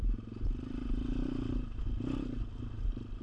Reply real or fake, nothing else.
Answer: real